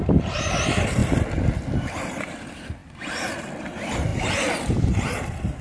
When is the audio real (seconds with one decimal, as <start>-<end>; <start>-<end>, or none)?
0.0-5.6